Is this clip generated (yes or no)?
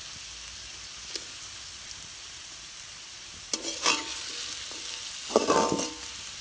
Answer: no